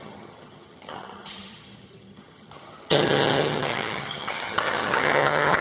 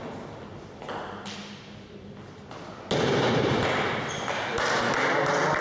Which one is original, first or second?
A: second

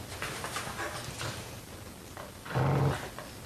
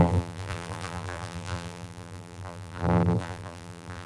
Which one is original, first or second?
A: first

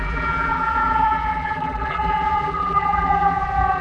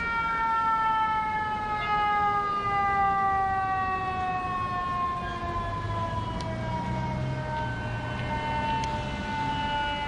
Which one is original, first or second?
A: second